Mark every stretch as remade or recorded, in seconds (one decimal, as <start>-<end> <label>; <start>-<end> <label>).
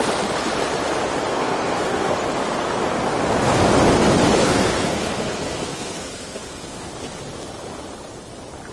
0.0-1.3 recorded; 1.3-2.1 remade; 2.1-4.4 recorded; 4.4-6.9 remade; 6.9-8.7 recorded